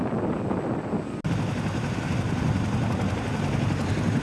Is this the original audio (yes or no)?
yes